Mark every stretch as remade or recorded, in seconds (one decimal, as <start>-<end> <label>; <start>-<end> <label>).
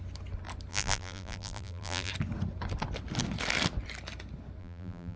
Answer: 0.0-0.7 recorded; 0.7-2.1 remade; 2.1-4.6 recorded; 4.6-5.2 remade